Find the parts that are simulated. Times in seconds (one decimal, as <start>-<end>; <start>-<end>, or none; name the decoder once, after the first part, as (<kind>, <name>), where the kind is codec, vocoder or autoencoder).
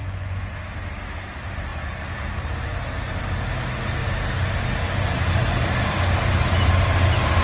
0.0-0.5 (vocoder, Vocos)